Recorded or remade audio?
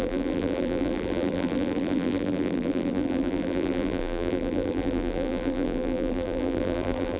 remade